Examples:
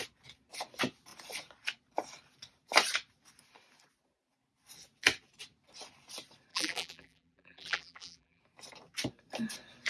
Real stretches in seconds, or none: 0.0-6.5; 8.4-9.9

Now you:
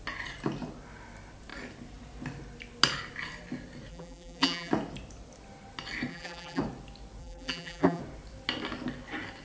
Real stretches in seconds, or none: 0.0-3.9; 4.7-6.1; 6.6-7.2; 8.0-9.4

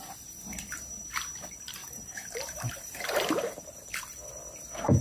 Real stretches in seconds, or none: 0.0-1.8; 3.9-5.0

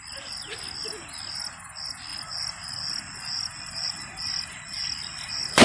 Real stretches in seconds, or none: 0.0-2.1

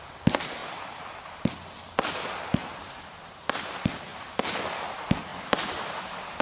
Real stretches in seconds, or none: 0.0-0.6; 1.4-2.6; 3.2-6.4

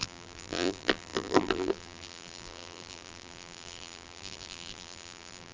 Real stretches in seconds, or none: none

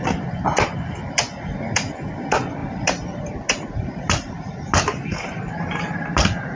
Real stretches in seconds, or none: 0.0-2.6; 4.5-6.5

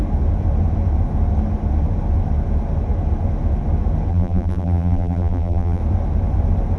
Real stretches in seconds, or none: 0.0-4.1; 5.8-6.8